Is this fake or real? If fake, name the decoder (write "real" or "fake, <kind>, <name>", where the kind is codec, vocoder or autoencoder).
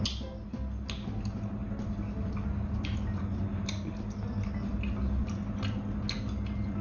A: real